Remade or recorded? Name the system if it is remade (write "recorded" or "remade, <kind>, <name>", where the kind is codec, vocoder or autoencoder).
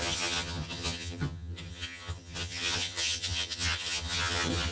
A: remade, vocoder, HiFi-GAN